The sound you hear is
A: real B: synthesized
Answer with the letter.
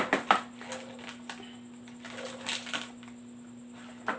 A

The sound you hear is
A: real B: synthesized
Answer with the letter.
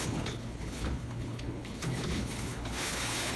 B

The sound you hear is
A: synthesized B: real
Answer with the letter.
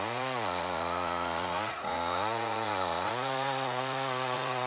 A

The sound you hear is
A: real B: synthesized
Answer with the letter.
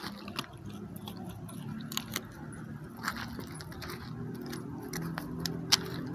A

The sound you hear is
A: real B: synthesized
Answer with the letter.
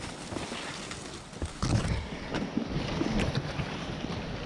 A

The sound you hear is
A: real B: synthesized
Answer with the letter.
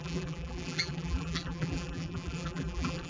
B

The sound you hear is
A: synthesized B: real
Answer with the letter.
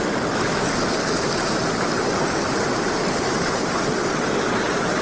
B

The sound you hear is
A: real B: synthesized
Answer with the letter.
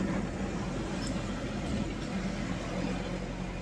A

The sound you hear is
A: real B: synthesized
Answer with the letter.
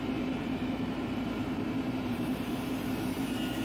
B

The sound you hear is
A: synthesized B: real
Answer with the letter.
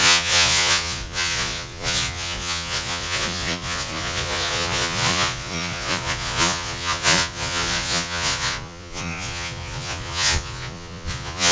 A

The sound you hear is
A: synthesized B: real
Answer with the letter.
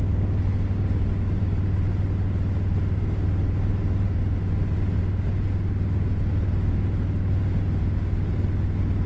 B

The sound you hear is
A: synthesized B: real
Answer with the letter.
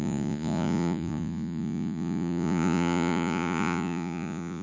A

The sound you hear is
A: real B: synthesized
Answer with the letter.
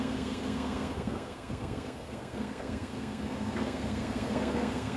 B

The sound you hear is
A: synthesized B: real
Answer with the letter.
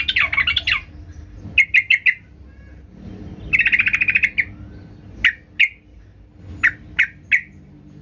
B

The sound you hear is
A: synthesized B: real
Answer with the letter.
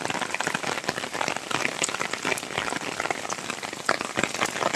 B